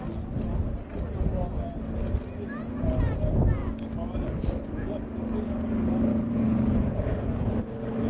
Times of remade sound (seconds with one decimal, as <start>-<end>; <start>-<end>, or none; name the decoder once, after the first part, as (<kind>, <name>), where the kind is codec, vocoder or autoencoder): 2.6-3.2 (vocoder, Vocos); 6.1-7.6